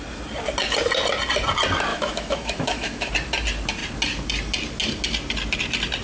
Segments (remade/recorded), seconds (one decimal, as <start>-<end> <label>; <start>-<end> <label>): 0.0-1.9 recorded; 1.9-3.1 remade; 3.1-6.0 recorded